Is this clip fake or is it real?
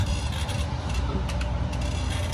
real